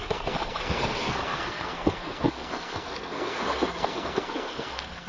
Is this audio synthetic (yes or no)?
yes